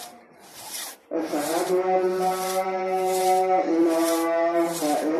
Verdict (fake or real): fake